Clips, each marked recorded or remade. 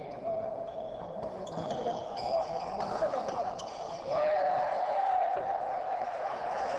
remade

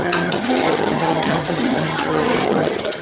remade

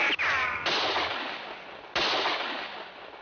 recorded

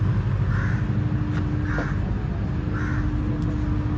recorded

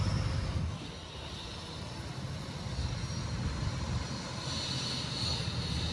recorded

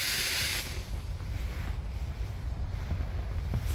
recorded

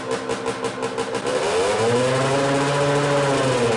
recorded